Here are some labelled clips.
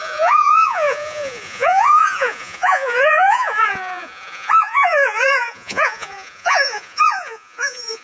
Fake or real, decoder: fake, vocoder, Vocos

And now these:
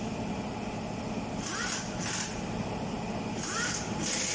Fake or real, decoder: real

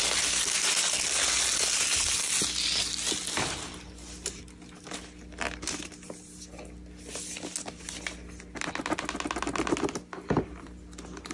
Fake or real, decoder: real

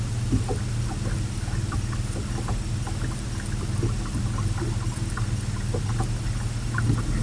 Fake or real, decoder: real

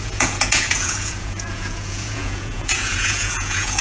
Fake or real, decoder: fake, vocoder, Vocos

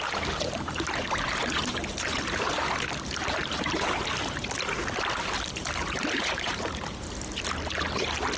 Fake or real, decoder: real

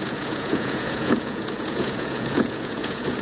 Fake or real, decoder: fake, vocoder, Vocos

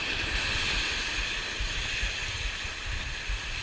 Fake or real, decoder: real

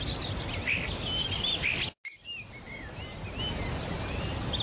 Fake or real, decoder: real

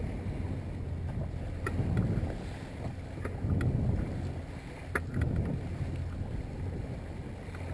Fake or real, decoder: real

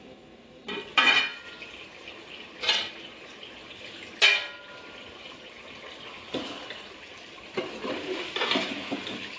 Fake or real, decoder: real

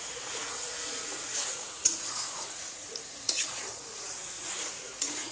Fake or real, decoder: fake, vocoder, Vocos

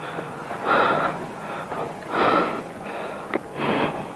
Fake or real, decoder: fake, vocoder, Vocos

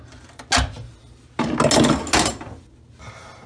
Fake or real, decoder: real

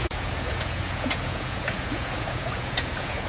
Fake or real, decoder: fake, vocoder, Vocos